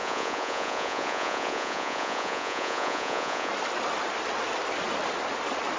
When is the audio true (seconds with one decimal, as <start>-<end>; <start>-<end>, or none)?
3.5-5.8